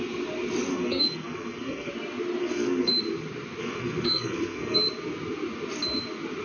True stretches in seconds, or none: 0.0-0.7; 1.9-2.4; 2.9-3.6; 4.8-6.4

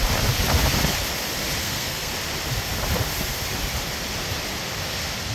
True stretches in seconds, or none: 0.0-1.6; 2.1-5.3